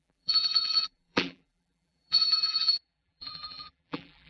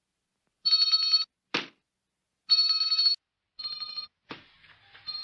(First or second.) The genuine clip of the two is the second